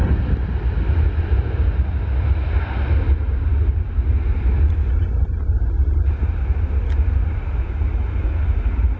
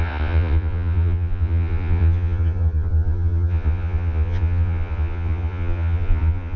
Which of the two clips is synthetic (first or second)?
second